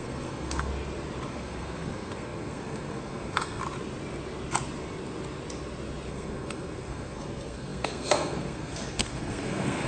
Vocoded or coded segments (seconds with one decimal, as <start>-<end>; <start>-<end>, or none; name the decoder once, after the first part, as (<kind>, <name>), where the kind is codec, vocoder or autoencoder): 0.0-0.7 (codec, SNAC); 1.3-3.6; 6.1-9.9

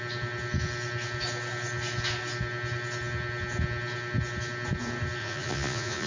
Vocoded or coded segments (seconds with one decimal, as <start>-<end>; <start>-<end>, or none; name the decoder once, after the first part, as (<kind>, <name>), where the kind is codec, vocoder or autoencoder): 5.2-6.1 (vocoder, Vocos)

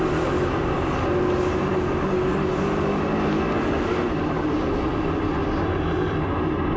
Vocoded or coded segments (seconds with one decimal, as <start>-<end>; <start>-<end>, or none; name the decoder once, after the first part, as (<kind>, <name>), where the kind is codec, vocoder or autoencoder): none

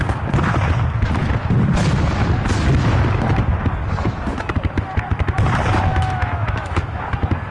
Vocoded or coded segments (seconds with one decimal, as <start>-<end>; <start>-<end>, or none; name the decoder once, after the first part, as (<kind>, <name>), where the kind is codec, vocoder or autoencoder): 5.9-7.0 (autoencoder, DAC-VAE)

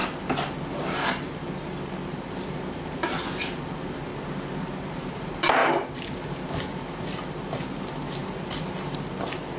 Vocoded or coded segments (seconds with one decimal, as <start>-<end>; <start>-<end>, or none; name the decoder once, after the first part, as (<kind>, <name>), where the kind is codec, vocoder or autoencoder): none